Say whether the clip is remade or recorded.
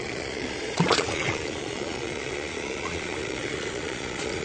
remade